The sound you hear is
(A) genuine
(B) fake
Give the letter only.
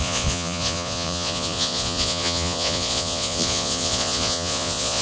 B